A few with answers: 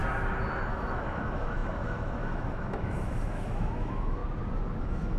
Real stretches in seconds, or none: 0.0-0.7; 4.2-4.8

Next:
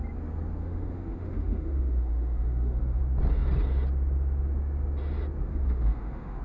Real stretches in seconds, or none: 0.0-0.6; 3.0-5.5